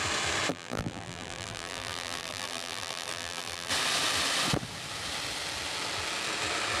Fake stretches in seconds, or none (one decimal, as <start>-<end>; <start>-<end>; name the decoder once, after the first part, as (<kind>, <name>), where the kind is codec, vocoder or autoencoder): 0.5-3.7 (vocoder, BigVGAN v2)